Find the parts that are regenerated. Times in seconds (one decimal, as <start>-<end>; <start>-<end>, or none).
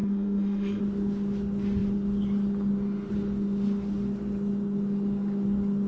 0.0-0.8